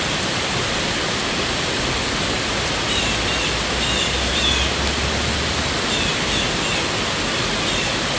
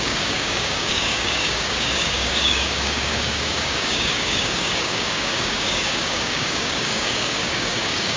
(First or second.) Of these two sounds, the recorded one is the first